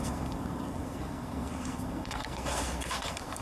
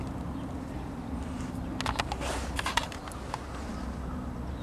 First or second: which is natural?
second